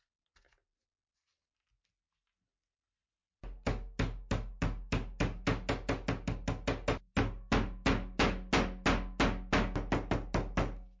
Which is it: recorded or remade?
recorded